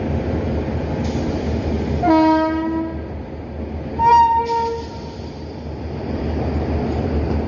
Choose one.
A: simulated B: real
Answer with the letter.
B